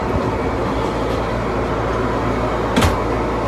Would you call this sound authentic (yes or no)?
yes